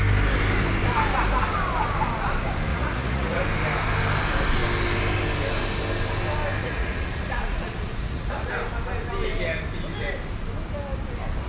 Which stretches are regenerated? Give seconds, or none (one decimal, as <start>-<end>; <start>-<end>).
2.7-3.4; 6.6-8.5

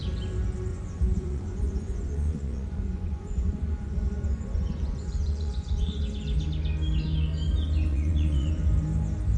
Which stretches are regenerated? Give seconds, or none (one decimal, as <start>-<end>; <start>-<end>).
0.7-6.0; 7.9-8.5

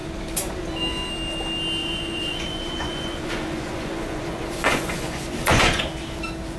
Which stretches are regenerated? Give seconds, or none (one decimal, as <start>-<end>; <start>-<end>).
1.8-5.8

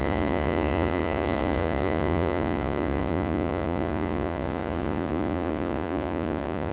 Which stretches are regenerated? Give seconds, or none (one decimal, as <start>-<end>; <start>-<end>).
0.0-6.7

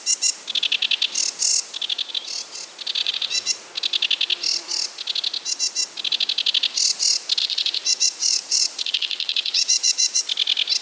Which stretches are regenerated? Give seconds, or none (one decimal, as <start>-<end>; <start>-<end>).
3.0-3.5; 7.4-10.2

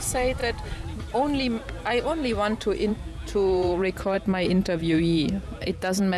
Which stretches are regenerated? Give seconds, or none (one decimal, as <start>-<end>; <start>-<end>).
0.0-0.4; 2.9-6.2